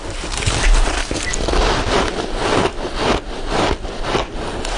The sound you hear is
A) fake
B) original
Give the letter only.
B